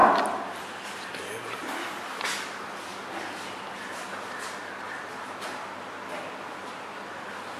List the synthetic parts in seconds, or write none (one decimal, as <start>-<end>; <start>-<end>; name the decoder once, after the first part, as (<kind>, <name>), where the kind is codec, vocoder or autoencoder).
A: none